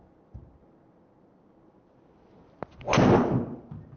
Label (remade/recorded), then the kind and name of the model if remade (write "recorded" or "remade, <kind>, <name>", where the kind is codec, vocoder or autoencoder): recorded